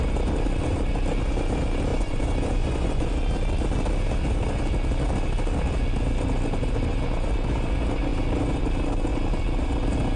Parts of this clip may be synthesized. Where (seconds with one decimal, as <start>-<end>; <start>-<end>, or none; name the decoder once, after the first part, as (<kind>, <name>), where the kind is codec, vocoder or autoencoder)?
1.9-3.1 (vocoder, Vocos)